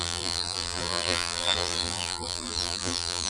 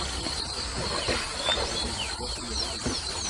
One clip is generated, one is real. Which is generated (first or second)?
first